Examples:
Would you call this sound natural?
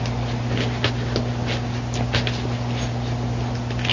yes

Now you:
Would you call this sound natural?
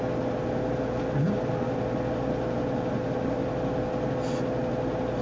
yes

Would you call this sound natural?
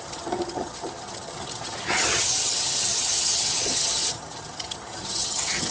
no